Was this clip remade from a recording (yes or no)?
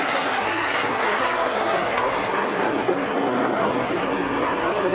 yes